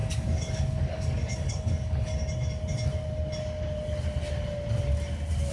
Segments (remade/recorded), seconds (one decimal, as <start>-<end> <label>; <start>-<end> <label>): 0.0-2.1 remade; 2.1-5.5 recorded